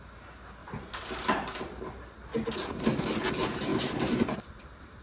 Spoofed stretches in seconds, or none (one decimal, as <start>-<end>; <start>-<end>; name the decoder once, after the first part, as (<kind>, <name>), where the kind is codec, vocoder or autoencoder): 0.6-1.6 (vocoder, BigVGAN v2); 2.3-2.8; 3.7-4.4